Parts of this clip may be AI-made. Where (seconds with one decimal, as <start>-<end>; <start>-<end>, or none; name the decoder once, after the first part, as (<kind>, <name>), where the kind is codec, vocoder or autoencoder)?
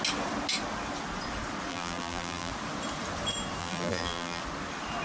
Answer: 1.7-2.5 (vocoder, BigVGAN v2); 3.6-4.4